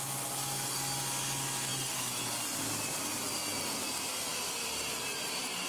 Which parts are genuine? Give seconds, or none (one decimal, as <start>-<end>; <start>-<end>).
0.0-5.7